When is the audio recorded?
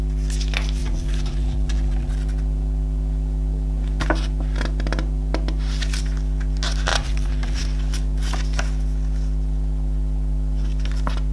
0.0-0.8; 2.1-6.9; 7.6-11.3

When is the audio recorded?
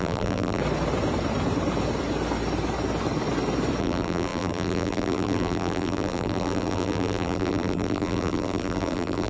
0.6-3.8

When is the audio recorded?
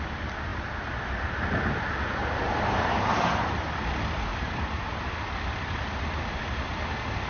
0.0-2.2; 3.4-4.3; 5.0-7.3